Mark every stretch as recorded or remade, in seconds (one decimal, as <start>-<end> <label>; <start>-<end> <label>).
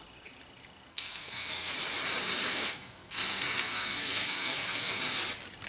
0.0-0.9 recorded; 0.9-1.7 remade; 1.7-2.5 recorded; 2.5-5.0 remade; 5.0-5.7 recorded